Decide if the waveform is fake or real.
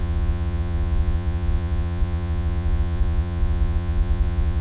fake